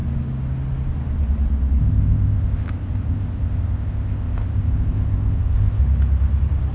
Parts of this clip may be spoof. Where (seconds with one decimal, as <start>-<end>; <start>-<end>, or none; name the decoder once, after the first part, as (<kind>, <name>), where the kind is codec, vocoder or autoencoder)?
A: 1.8-5.8 (codec, ZipCodec)